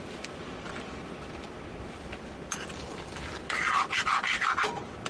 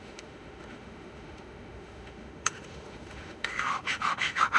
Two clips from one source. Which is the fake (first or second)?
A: second